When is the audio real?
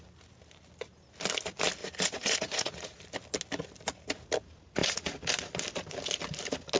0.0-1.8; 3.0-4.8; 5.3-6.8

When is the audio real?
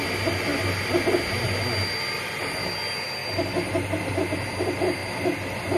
0.0-3.2; 4.0-5.8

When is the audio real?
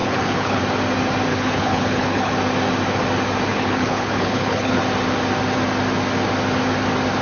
0.6-1.3; 2.3-3.5; 4.8-7.2